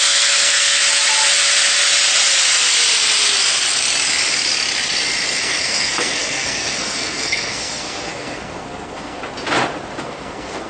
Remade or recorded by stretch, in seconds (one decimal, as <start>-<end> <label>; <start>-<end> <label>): 0.0-0.8 remade; 0.8-5.4 recorded; 5.4-9.2 remade; 9.2-10.0 recorded; 10.0-10.7 remade